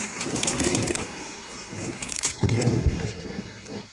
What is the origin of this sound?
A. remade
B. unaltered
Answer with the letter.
A